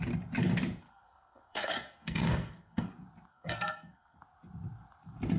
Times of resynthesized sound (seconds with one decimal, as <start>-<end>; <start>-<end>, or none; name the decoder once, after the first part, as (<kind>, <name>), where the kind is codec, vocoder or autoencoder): 0.8-2.9 (codec, SNAC); 3.3-4.2